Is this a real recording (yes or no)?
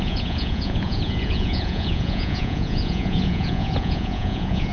no